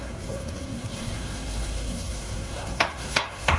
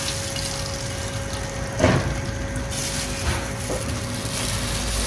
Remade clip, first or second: first